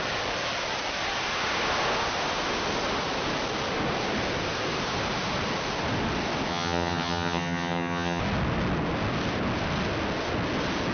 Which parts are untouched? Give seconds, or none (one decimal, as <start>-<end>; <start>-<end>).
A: 0.0-6.5; 8.2-10.9